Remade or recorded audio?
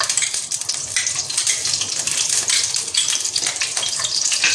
remade